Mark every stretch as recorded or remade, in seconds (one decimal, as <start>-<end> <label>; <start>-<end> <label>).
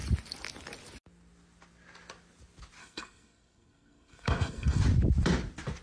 0.0-2.8 recorded; 2.8-4.8 remade; 4.8-5.8 recorded